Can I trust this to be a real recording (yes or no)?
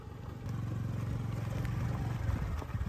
yes